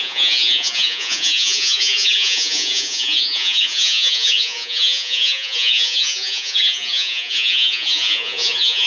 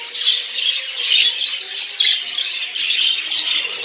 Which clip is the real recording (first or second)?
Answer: second